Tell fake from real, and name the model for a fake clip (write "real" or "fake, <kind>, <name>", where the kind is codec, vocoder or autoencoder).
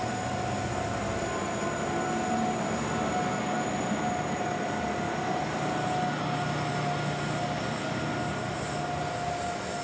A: real